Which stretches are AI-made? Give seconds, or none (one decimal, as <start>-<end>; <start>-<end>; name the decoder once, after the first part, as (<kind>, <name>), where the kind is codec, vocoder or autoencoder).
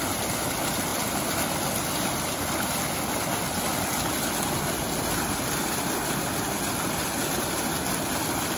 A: none